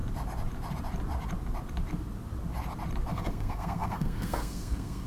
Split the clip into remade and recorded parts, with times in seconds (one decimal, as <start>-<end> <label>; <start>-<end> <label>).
0.0-3.1 recorded; 3.1-5.1 remade